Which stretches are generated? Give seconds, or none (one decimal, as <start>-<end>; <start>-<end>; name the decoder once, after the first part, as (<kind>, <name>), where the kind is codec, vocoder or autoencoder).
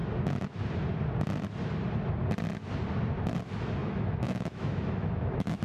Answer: 3.8-5.6 (autoencoder, DAC-VAE)